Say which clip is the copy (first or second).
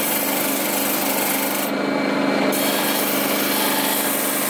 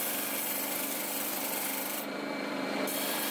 second